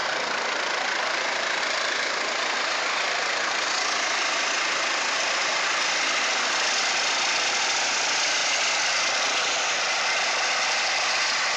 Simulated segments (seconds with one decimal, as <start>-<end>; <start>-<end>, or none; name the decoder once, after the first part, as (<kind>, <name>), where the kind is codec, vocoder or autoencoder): none